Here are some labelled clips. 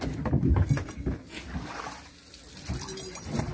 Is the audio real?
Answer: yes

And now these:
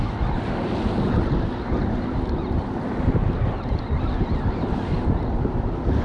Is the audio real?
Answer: yes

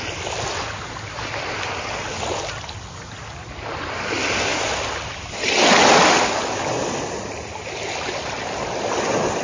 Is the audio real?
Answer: yes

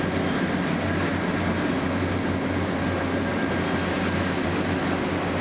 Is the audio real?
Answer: yes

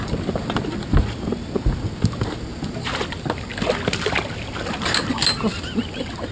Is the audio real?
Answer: yes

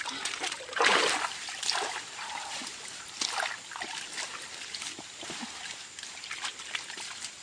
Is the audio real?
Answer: yes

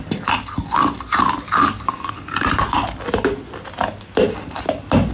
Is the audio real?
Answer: yes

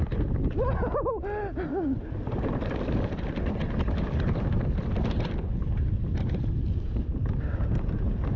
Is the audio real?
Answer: yes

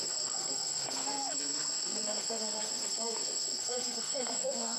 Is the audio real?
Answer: no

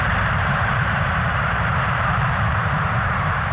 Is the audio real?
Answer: no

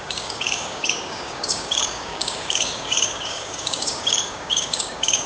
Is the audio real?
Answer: no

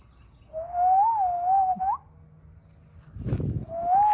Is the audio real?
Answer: yes